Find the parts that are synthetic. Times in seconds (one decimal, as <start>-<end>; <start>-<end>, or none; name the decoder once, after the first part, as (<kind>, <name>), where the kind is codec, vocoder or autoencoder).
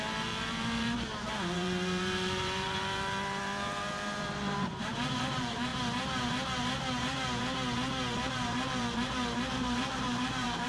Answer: 0.0-5.7 (vocoder, BigVGAN v2); 8.3-10.7